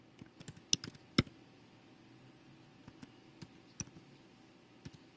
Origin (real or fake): real